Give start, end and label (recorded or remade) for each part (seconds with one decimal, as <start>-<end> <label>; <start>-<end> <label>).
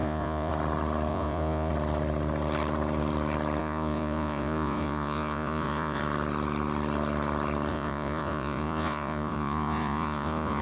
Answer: 0.0-0.5 remade; 0.5-1.1 recorded; 1.1-1.7 remade; 1.7-3.6 recorded; 3.6-6.0 remade; 6.0-7.7 recorded; 7.7-10.6 remade